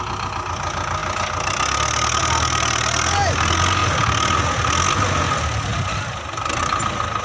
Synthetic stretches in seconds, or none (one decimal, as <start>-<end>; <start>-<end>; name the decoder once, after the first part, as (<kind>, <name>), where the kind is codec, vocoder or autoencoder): none

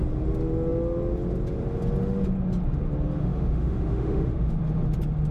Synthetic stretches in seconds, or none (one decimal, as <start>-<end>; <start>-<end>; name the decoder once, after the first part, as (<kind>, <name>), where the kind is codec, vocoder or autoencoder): 3.2-4.6 (autoencoder, DAC-VAE)

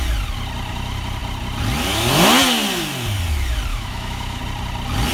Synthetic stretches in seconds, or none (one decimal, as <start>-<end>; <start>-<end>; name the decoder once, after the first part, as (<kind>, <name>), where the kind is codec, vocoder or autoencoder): 3.7-4.4 (autoencoder, DAC-VAE)

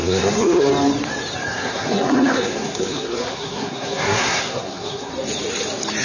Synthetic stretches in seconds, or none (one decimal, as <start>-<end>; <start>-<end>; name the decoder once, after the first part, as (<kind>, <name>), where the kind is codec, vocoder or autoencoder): 0.0-0.7 (codec, SNAC); 1.5-5.1

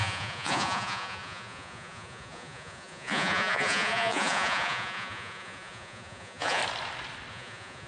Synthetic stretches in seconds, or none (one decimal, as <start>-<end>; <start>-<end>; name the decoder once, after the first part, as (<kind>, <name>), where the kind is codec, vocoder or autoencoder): 0.0-6.6 (vocoder, Vocos); 7.3-7.9

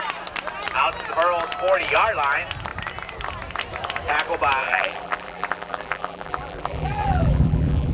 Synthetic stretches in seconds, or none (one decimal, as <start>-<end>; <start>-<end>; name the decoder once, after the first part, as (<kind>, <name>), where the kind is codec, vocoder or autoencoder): 4.6-7.9 (vocoder, BigVGAN v2)